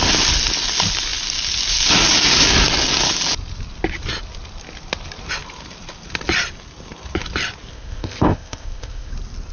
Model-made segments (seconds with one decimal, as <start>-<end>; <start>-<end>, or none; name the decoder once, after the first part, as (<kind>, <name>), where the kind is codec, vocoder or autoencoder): 7.7-9.1 (codec, ZipCodec)